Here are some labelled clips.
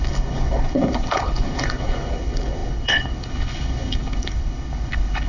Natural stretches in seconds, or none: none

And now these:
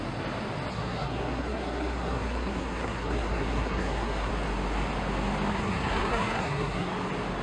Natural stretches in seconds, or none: 0.0-0.7; 4.3-5.5; 6.9-7.4

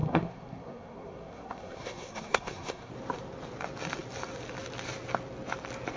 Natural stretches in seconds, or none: 2.9-6.0

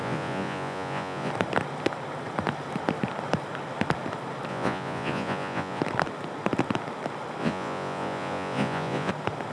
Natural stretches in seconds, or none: 1.3-4.5; 5.8-7.4; 9.1-9.5

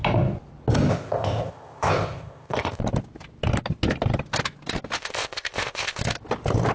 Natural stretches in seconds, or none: 0.0-0.9; 2.8-5.0; 6.0-6.7